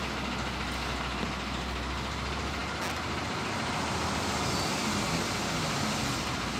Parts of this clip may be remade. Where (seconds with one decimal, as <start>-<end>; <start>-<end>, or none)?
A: none